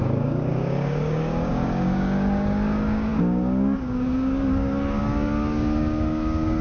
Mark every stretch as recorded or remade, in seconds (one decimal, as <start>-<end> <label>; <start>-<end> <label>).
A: 0.0-6.6 remade